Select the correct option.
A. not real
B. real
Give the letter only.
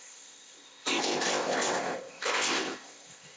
A